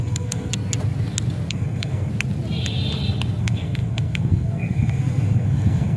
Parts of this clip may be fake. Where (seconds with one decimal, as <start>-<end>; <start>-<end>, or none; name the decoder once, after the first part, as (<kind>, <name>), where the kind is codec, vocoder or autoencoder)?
0.0-0.5 (codec, SNAC); 1.5-2.1; 3.4-6.0